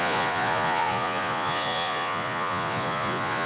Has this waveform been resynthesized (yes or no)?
yes